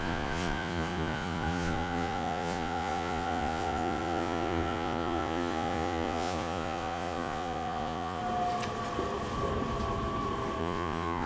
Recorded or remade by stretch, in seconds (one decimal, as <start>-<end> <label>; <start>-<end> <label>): 0.0-8.2 remade; 8.2-10.6 recorded; 10.6-11.3 remade